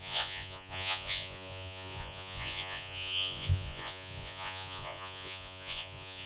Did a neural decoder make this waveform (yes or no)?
yes